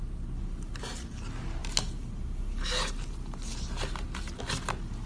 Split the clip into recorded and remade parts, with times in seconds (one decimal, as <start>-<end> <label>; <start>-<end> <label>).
0.0-5.1 recorded